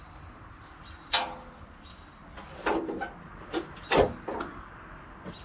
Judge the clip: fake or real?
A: fake